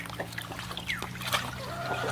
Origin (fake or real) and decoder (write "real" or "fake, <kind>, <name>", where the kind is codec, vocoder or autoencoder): real